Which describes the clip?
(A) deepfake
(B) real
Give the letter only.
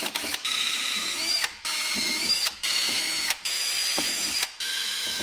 A